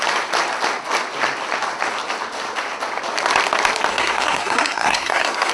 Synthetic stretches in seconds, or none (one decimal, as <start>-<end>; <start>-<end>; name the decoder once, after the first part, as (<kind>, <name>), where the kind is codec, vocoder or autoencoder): 3.9-5.5 (codec, SNAC)